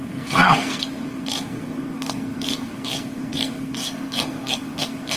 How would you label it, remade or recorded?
remade